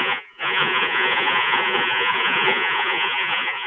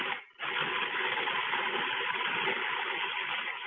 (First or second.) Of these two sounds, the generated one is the first